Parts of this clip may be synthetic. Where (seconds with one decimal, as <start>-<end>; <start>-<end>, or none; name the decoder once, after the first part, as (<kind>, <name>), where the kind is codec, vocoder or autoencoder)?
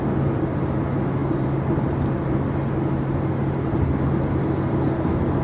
none